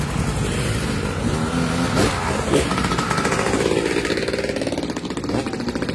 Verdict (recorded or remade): recorded